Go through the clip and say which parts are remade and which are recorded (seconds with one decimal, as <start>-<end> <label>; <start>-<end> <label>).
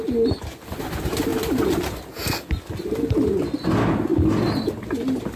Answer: 0.0-5.4 recorded